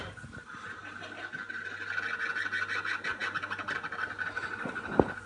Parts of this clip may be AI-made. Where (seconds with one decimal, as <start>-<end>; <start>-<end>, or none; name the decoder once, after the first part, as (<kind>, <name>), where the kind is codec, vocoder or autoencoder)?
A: none